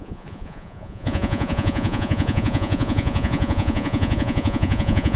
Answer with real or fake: fake